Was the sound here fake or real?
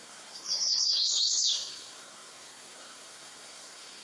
fake